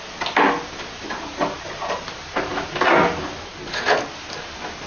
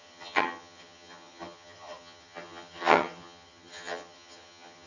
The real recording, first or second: first